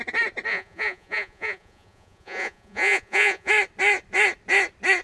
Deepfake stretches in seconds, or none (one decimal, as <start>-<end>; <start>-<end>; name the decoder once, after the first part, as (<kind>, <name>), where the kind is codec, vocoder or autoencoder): 0.5-3.5 (vocoder, Vocos)